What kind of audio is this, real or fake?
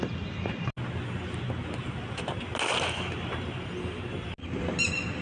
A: real